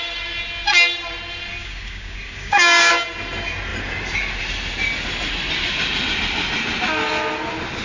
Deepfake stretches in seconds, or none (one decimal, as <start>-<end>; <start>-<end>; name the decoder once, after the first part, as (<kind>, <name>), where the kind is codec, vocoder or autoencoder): 1.6-2.9 (codec, DAC)